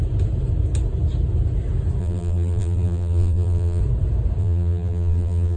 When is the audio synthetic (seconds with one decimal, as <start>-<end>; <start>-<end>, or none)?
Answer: 2.0-3.8; 4.4-5.6